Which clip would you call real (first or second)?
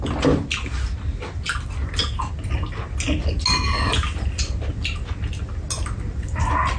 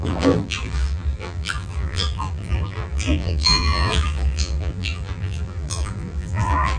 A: first